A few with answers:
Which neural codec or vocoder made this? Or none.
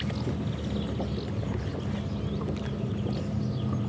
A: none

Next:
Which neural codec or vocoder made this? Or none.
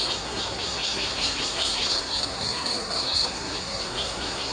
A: codec, SNAC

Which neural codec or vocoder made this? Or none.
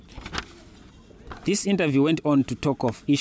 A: none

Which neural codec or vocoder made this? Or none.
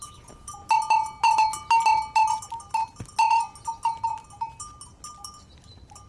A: none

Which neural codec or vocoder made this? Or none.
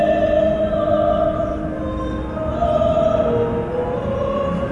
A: none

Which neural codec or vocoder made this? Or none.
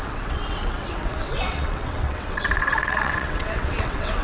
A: vocoder, WaveNeXt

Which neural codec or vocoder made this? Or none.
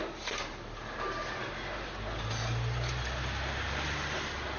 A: none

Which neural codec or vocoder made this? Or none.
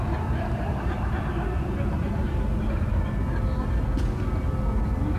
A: none